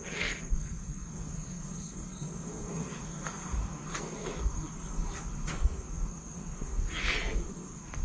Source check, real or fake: fake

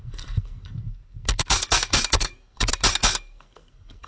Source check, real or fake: fake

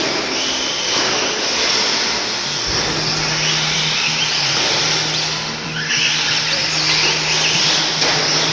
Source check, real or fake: real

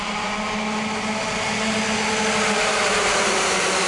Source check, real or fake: real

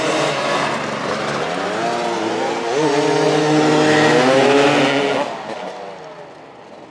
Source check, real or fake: real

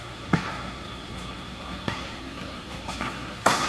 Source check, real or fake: fake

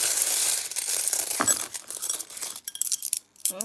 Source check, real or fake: fake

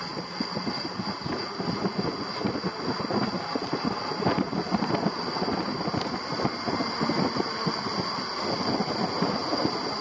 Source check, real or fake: real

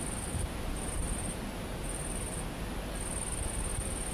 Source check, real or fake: real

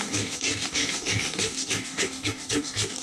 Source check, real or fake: fake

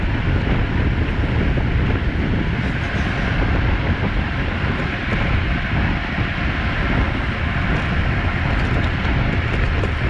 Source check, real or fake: real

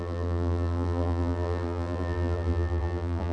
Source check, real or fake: fake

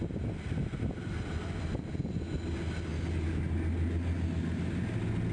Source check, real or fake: real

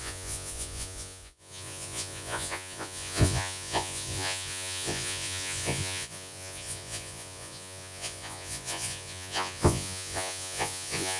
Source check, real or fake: fake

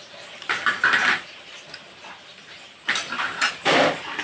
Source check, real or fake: real